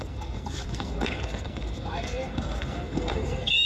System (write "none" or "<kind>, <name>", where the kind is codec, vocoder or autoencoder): codec, SNAC